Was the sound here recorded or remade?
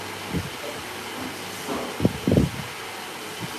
recorded